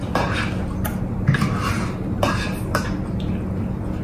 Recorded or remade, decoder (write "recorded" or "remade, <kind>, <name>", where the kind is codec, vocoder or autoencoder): recorded